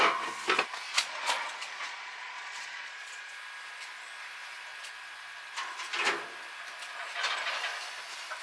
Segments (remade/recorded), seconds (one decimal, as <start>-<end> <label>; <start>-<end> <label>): 0.0-0.9 recorded; 0.9-3.3 remade; 3.3-8.4 recorded